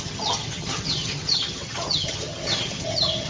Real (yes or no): no